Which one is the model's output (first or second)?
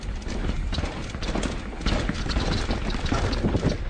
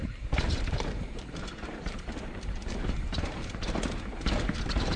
second